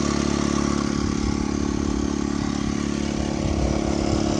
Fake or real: real